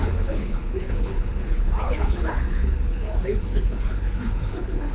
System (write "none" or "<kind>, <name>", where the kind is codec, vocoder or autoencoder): codec, HILCodec